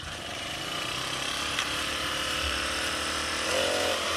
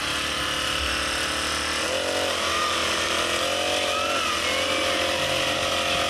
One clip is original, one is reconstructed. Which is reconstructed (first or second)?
first